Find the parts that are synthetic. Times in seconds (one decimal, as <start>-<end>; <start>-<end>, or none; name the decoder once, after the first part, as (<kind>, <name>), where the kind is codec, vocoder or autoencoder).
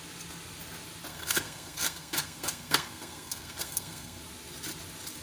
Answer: 1.1-4.2 (codec, SNAC)